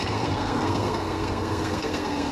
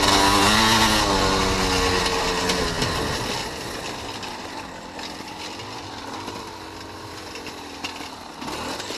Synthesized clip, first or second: first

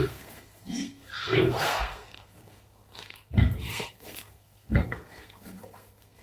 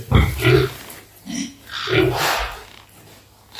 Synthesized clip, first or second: first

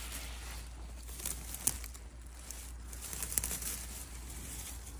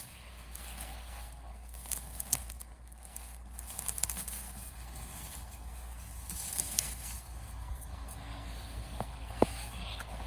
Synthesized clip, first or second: second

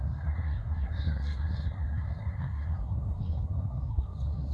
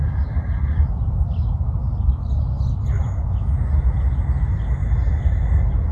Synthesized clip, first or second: first